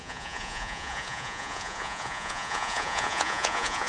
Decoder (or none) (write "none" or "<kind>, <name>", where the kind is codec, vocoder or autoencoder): vocoder, Vocos